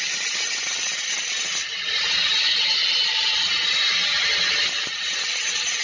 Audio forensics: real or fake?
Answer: real